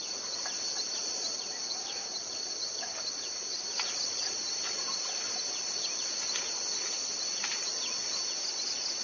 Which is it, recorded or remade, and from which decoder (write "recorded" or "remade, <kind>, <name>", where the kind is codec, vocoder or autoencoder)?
recorded